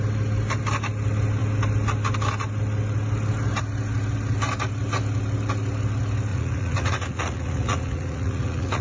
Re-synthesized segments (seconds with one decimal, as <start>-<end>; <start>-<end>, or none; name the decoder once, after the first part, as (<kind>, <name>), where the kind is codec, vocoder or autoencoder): 6.3-8.8 (vocoder, Vocos)